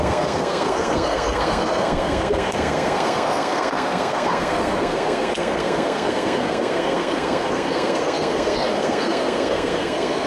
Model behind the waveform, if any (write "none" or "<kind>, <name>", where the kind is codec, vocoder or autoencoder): codec, SNAC